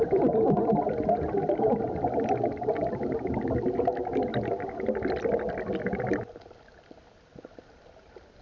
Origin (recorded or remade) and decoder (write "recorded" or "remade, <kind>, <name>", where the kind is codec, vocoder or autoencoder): recorded